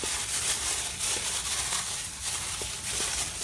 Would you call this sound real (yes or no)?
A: yes